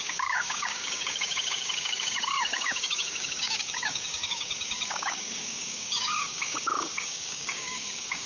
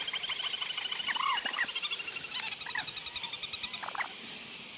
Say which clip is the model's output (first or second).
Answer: first